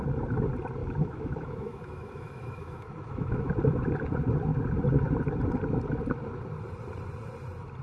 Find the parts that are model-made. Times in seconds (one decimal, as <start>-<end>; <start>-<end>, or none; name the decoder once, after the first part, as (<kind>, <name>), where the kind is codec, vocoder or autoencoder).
0.8-3.5 (autoencoder, DAC-VAE)